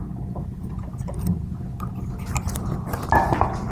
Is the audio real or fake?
real